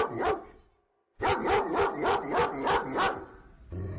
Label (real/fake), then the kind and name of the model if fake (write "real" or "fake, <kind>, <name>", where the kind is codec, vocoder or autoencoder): real